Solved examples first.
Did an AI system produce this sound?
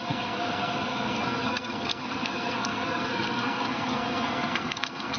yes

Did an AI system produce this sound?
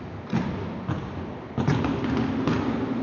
no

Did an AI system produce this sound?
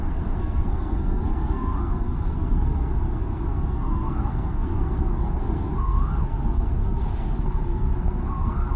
yes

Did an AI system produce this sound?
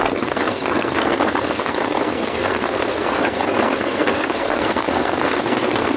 yes